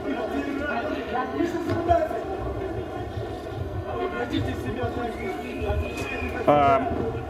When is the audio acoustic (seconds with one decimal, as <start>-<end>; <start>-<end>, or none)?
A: 0.0-0.9; 1.7-3.6; 4.4-5.3; 6.1-7.3